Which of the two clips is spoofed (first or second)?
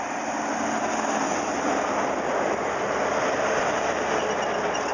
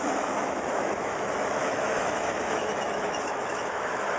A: second